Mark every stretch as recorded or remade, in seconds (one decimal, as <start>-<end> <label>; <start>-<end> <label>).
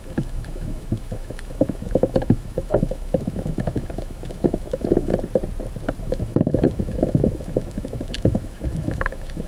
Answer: 0.0-5.1 remade; 5.1-6.0 recorded; 6.0-9.5 remade